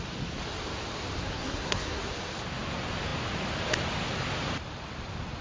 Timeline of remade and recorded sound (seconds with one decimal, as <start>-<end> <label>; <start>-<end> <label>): 0.0-1.2 recorded; 1.2-2.0 remade; 2.0-5.4 recorded